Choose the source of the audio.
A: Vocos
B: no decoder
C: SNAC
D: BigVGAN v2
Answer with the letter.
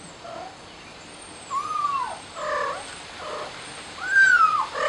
B